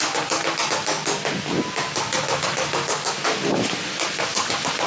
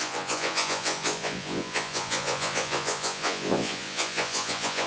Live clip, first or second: first